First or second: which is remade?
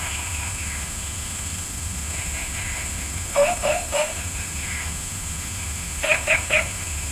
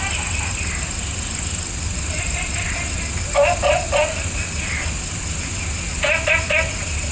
first